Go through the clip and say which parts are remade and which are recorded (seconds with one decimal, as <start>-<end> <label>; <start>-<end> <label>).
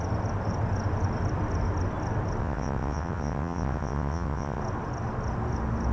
0.0-2.4 recorded; 2.4-4.6 remade; 4.6-5.9 recorded